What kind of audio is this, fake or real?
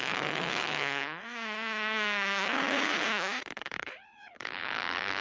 fake